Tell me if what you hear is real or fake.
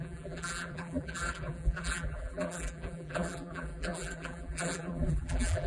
fake